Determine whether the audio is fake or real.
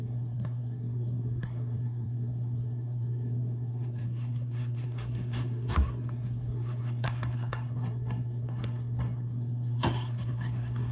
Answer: fake